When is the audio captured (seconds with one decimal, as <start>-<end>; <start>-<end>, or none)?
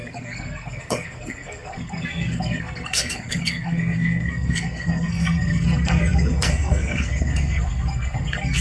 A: none